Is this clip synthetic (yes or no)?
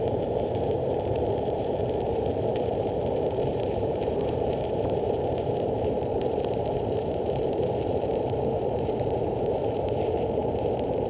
yes